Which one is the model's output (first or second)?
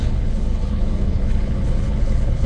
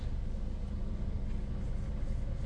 first